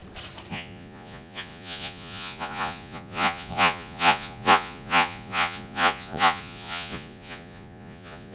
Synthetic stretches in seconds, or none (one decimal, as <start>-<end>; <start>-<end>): 0.5-8.3